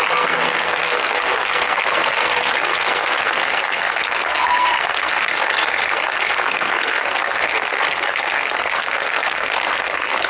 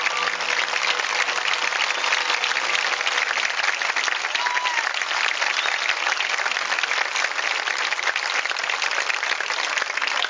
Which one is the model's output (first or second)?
first